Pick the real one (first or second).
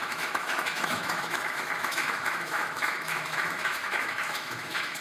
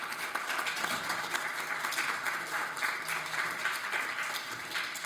second